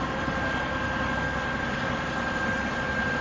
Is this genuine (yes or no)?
yes